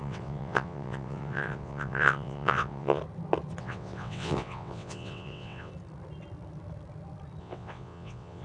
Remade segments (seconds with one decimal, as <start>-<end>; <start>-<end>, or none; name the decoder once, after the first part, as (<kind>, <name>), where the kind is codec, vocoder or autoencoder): 0.0-3.0 (vocoder, WaveNeXt); 3.6-5.7; 7.4-8.4